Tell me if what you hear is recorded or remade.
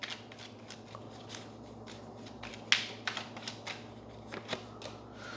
recorded